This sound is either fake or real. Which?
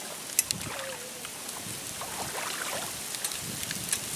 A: real